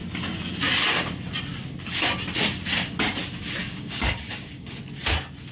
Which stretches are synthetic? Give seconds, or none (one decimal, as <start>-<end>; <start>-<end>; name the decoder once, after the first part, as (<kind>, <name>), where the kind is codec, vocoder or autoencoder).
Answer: 3.6-4.8 (codec, DAC)

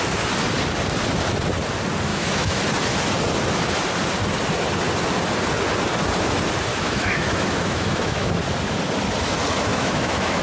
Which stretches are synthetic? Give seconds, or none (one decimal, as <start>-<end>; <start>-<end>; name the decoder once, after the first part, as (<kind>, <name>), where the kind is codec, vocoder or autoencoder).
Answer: 2.1-2.6 (autoencoder, DAC-VAE); 6.7-8.3; 9.7-10.4

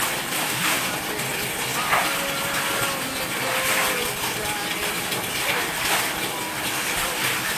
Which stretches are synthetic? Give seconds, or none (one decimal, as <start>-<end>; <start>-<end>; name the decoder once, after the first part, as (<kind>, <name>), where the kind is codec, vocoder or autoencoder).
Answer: 0.4-0.9 (autoencoder, DAC-VAE)

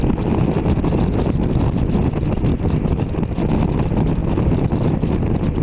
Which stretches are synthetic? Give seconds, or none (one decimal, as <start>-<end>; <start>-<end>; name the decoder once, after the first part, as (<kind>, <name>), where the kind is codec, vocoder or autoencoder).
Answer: none

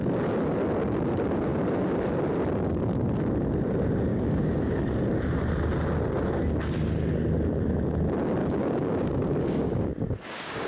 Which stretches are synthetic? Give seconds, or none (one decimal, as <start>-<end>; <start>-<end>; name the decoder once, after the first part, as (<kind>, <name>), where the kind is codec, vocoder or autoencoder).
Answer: 4.1-4.8 (codec, DAC); 8.4-10.7

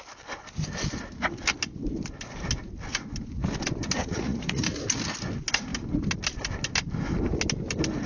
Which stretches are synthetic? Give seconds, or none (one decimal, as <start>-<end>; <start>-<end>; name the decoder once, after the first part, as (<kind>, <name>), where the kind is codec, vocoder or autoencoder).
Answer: 4.0-4.6 (vocoder, Vocos)